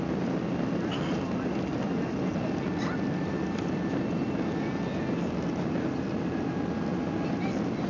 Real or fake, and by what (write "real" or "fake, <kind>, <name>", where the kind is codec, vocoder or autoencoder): real